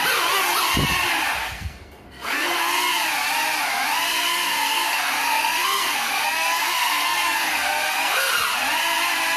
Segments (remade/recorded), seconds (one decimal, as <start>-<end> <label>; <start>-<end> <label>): 0.0-1.4 recorded; 1.4-2.8 remade; 2.8-4.1 recorded; 4.1-8.3 remade; 8.3-9.4 recorded